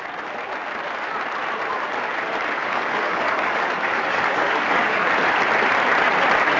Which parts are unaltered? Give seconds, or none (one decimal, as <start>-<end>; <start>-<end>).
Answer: 0.0-2.6; 5.1-6.6